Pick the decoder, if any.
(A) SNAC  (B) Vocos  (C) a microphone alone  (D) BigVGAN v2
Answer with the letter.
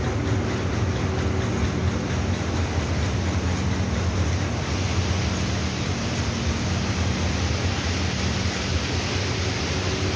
C